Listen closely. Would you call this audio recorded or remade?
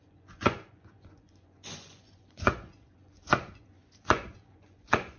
remade